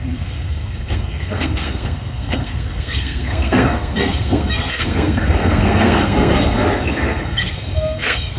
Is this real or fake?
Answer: fake